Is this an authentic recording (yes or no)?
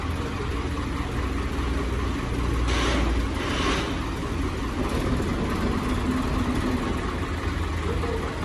yes